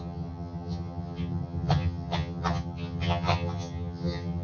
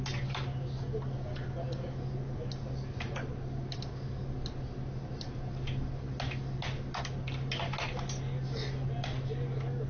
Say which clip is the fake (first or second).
first